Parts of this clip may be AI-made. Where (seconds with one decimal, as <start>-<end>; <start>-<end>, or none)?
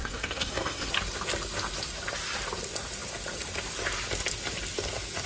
0.0-0.9